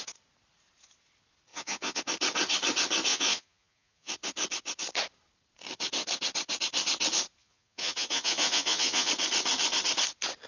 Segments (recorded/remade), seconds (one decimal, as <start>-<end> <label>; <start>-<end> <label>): 0.0-1.5 recorded; 1.5-2.0 remade; 2.0-3.1 recorded; 3.1-4.1 remade; 4.1-7.4 recorded; 7.4-9.1 remade; 9.1-10.5 recorded